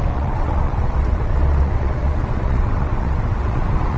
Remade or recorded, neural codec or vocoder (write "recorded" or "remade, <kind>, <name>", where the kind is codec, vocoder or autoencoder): remade, vocoder, WaveNeXt